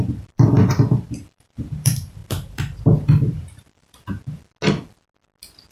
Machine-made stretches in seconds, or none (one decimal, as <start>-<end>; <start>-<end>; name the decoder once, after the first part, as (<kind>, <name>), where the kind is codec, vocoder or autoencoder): 0.0-4.4 (vocoder, BigVGAN v2)